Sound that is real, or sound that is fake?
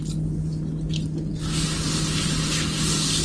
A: real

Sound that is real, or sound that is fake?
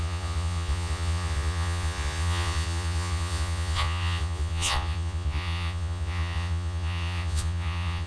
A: fake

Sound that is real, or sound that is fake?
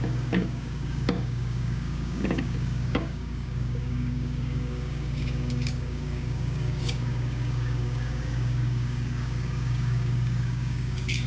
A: fake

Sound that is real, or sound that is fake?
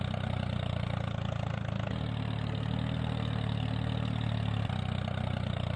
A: real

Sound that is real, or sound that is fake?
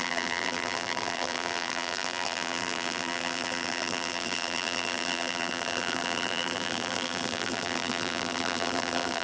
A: fake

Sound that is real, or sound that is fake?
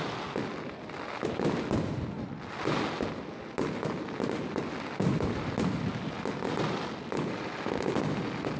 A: real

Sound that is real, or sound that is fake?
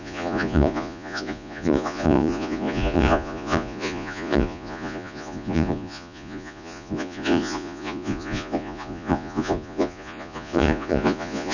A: fake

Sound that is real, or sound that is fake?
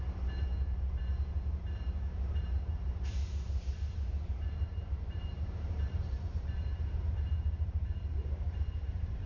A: fake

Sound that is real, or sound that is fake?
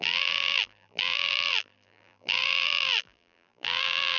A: fake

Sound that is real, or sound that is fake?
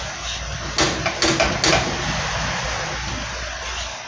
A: real